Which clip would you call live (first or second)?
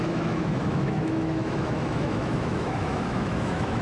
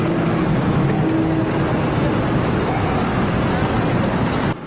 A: second